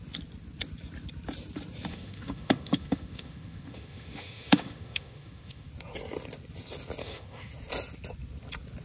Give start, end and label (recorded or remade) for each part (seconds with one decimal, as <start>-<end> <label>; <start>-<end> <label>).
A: 0.0-1.9 recorded; 1.9-5.7 remade; 5.7-7.0 recorded; 7.0-7.5 remade; 7.5-8.8 recorded